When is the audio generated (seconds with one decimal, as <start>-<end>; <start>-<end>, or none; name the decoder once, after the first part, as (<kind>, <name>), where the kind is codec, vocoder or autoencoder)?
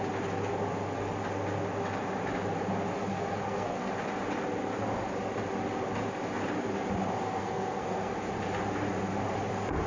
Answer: 3.1-3.9 (codec, SNAC); 7.4-8.1